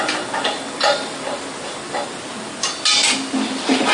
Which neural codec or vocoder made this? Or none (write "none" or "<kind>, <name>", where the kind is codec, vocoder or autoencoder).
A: none